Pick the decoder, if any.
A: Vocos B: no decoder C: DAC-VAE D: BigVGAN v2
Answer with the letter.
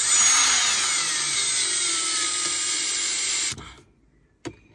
B